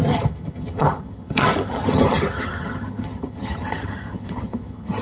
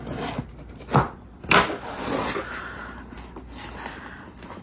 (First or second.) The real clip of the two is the second